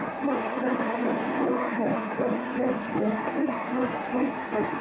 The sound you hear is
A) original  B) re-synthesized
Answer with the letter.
B